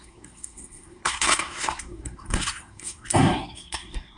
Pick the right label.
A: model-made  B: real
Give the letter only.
A